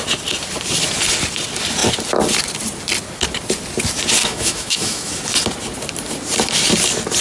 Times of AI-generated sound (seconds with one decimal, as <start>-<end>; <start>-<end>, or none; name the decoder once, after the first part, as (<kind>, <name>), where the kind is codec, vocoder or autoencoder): 4.2-5.1 (autoencoder, DAC-VAE)